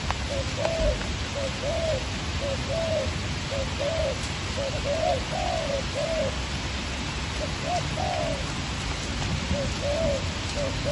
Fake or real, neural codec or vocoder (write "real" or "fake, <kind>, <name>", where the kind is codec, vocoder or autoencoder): real